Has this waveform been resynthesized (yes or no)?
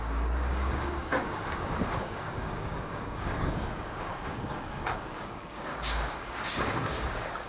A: yes